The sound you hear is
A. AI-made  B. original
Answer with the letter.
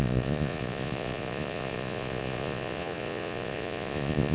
A